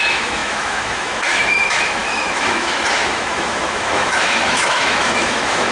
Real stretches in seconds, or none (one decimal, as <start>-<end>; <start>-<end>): none